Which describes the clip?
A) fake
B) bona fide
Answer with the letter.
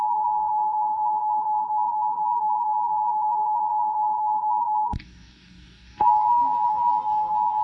A